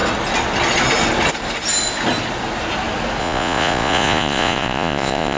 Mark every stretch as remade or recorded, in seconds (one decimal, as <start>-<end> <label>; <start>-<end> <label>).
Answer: 0.0-3.2 recorded; 3.2-5.4 remade